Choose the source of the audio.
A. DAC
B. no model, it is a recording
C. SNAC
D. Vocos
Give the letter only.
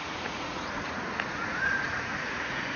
D